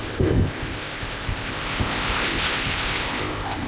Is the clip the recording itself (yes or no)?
no